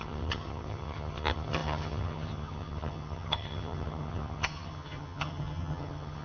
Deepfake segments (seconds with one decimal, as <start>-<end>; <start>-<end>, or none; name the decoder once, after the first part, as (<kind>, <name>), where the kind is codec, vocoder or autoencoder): 0.0-6.2 (vocoder, HiFi-GAN)